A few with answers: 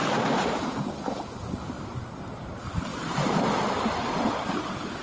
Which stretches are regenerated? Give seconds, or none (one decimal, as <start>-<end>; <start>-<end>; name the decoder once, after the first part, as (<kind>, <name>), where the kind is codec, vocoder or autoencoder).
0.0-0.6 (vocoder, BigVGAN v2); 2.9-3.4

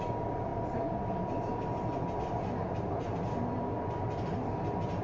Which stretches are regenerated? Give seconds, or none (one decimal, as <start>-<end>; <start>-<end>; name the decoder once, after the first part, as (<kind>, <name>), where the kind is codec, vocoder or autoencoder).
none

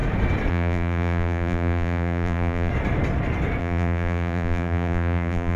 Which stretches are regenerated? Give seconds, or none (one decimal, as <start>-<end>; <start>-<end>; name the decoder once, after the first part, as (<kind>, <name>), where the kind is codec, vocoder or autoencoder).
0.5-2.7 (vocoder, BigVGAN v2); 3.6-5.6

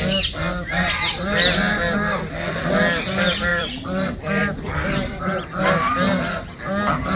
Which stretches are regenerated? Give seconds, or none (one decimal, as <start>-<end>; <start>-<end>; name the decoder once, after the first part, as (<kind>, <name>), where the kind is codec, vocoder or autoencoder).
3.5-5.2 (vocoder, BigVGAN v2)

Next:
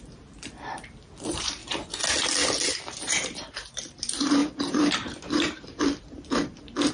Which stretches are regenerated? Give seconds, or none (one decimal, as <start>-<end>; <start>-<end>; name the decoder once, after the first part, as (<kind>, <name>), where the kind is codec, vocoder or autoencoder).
0.0-1.6 (vocoder, BigVGAN v2); 3.1-6.9

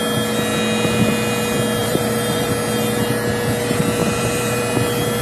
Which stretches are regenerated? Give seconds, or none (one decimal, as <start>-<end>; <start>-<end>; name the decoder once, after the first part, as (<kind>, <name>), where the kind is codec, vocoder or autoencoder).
1.8-2.5 (vocoder, BigVGAN v2); 4.0-4.6

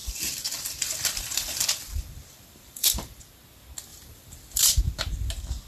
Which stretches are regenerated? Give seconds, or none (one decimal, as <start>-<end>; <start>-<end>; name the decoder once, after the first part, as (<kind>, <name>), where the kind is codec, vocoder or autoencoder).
0.0-3.2 (vocoder, BigVGAN v2); 3.9-4.8